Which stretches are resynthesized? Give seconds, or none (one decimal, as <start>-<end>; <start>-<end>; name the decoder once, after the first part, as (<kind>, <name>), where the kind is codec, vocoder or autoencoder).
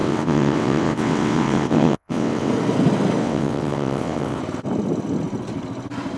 0.0-2.5 (vocoder, WaveNeXt); 3.2-4.4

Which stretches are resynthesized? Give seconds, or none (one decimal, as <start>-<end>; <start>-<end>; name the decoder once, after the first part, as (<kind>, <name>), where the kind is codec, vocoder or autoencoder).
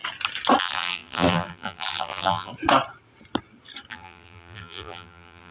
0.6-2.5 (vocoder, BigVGAN v2); 3.9-5.5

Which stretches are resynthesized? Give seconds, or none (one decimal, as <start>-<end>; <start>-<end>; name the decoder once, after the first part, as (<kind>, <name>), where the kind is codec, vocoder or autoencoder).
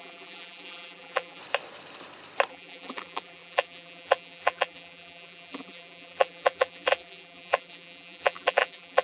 0.0-1.4 (vocoder, BigVGAN v2); 2.5-9.0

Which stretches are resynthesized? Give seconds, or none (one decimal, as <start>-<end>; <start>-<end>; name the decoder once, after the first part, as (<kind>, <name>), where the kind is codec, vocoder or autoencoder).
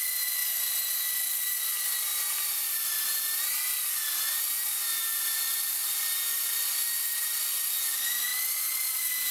none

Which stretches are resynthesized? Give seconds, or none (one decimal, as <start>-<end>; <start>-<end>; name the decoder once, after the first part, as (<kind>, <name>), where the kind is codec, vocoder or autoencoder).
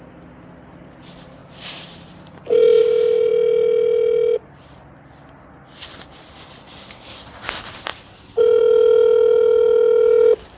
1.4-2.8 (vocoder, BigVGAN v2)